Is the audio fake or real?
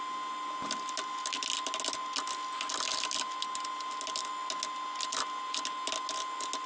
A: real